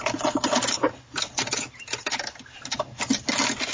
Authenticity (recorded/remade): recorded